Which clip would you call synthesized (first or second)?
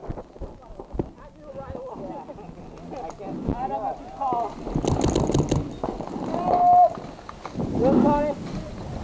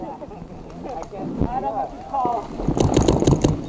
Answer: second